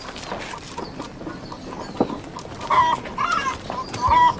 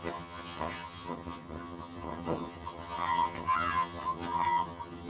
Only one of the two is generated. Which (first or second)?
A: second